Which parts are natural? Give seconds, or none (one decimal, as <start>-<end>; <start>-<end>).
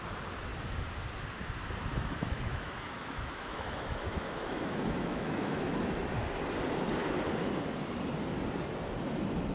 0.0-1.9; 6.0-9.5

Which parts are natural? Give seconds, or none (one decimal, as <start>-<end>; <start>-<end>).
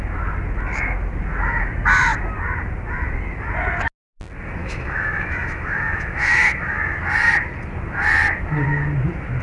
0.0-4.6; 6.5-9.4